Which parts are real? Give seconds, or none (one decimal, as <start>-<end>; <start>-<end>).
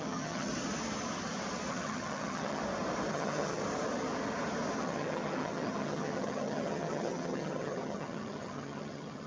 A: 0.5-1.7; 2.6-3.1; 3.6-4.8